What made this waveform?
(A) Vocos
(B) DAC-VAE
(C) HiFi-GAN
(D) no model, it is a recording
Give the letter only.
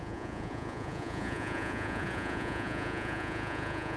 A